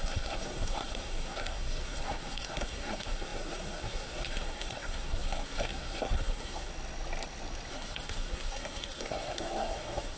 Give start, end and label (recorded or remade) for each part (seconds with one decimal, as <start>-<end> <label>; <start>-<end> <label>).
0.0-6.7 remade; 6.7-7.7 recorded; 7.7-10.2 remade